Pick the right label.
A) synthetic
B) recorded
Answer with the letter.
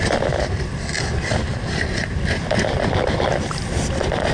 B